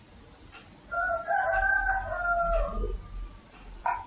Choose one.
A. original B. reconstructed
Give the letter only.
A